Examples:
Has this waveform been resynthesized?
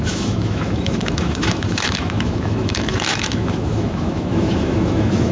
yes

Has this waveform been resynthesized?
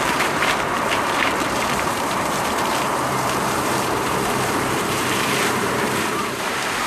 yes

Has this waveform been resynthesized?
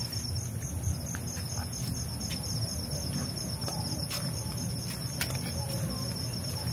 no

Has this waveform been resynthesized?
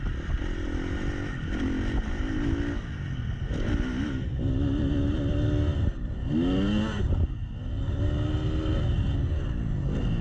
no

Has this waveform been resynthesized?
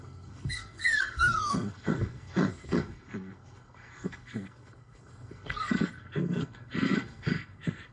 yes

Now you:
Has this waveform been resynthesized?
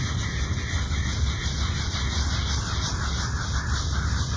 no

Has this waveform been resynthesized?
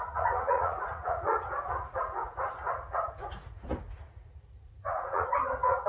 yes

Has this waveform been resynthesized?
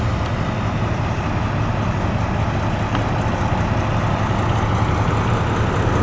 no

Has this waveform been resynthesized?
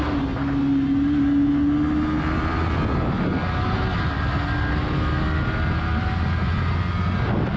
no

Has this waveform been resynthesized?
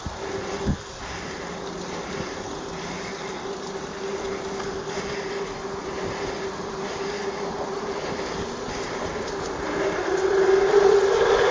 no